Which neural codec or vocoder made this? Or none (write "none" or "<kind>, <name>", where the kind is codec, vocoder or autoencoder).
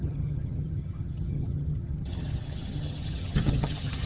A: vocoder, HiFi-GAN